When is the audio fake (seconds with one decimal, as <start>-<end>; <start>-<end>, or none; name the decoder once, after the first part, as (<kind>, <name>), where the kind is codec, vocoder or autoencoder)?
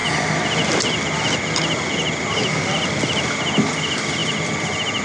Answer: none